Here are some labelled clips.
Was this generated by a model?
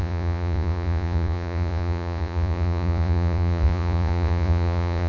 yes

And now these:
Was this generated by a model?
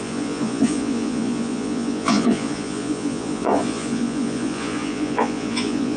yes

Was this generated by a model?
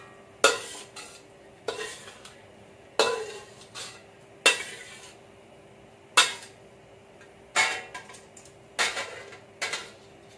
no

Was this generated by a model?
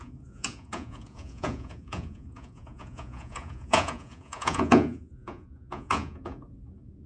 yes